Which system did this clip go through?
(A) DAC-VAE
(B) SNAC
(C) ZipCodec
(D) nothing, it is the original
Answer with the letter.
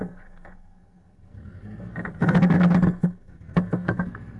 B